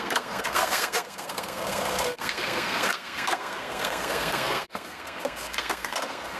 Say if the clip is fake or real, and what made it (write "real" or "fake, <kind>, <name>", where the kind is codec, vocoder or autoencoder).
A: fake, codec, SNAC